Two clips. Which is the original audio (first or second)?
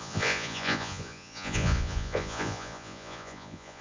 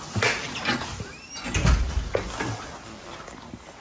second